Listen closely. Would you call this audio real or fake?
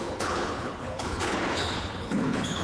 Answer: fake